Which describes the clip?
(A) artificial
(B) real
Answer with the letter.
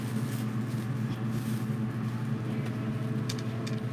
B